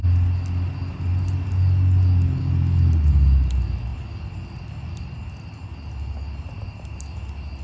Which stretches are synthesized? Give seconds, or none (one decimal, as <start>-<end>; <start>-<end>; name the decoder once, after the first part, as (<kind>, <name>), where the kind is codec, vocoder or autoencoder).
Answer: none